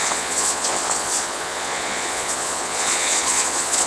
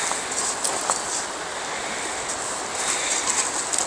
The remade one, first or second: first